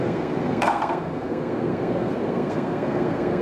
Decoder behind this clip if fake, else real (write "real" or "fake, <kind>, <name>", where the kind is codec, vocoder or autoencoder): fake, codec, SNAC